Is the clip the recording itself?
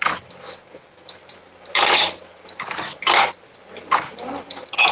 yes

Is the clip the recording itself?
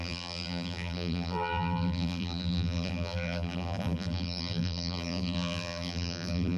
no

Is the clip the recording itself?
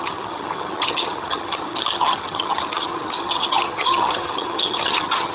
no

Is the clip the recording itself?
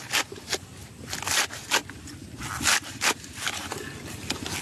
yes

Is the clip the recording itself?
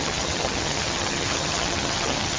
no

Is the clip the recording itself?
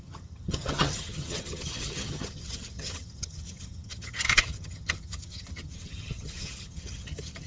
no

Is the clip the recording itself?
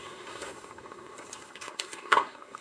no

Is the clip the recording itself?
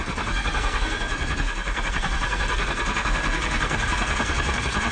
no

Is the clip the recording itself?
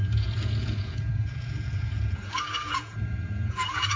no